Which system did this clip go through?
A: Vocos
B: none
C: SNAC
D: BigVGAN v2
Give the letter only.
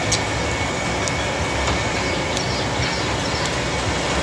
B